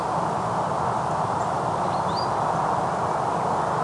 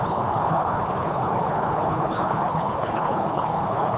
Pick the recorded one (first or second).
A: first